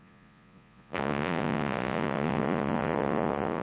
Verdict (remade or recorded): remade